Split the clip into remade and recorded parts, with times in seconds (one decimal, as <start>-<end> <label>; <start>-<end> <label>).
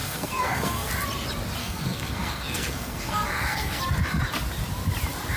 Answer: 0.0-0.9 remade; 0.9-1.6 recorded; 1.6-3.8 remade; 3.8-5.4 recorded